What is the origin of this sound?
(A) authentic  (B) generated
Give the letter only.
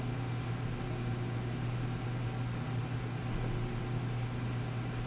A